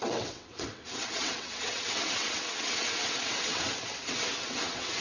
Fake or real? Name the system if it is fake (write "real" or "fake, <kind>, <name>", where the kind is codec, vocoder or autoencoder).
fake, vocoder, WaveNeXt